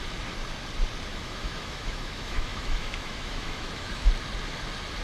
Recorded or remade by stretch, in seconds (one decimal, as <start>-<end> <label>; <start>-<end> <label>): 0.0-1.1 recorded; 1.1-4.1 remade; 4.1-5.0 recorded